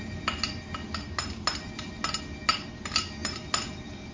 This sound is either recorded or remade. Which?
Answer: recorded